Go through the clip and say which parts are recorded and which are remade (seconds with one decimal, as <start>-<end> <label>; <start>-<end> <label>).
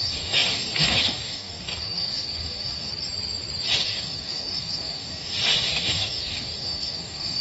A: 0.0-2.9 remade; 2.9-3.8 recorded; 3.8-7.4 remade